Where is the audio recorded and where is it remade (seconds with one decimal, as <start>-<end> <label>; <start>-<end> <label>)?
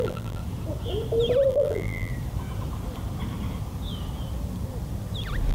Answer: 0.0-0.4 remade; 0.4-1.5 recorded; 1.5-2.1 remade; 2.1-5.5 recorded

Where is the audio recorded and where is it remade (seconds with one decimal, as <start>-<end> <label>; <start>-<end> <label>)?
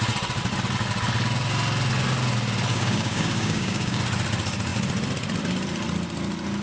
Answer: 0.0-2.7 recorded; 2.7-4.0 remade; 4.0-6.6 recorded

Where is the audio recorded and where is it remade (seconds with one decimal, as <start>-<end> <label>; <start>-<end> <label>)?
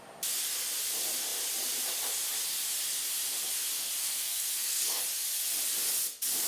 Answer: 0.0-4.0 recorded; 4.0-5.0 remade; 5.0-6.5 recorded